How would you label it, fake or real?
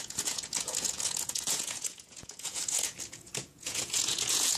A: fake